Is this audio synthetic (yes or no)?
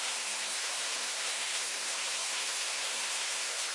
yes